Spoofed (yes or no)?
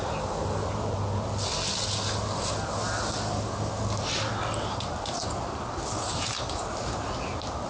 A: no